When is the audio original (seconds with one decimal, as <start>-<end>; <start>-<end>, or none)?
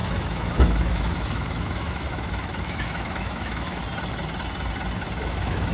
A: 3.8-5.2